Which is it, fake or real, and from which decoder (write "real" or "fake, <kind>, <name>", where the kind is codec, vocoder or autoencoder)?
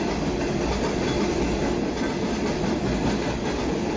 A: real